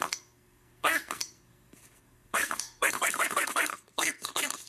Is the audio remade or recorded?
remade